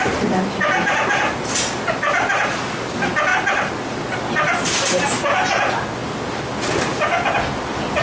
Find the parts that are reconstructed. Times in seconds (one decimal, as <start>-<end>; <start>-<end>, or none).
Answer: none